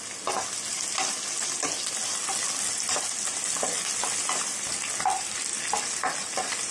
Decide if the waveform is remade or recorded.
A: recorded